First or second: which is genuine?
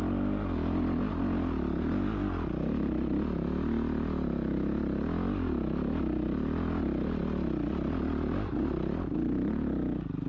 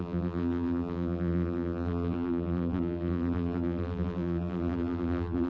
first